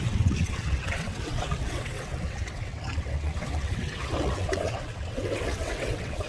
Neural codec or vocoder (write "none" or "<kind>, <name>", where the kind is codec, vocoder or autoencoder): vocoder, WaveNeXt